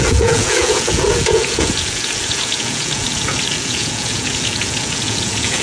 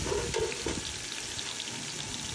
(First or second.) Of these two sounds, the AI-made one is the first